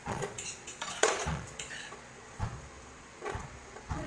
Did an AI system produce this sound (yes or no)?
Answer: yes